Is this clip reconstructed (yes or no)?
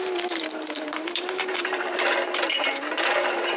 yes